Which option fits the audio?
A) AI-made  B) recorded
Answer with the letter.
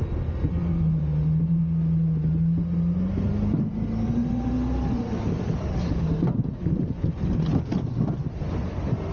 B